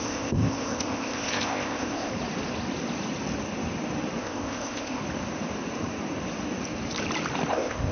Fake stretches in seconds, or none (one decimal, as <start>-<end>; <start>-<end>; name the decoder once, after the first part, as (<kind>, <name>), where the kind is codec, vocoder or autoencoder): 0.0-2.1 (codec, ZipCodec); 4.2-5.0; 7.5-7.9